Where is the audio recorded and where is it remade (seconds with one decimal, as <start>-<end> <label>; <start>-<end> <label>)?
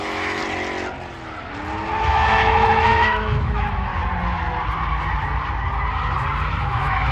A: 0.0-0.4 remade; 0.4-2.1 recorded; 2.1-3.9 remade; 3.9-6.6 recorded; 6.6-7.1 remade